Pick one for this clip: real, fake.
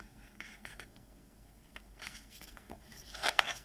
fake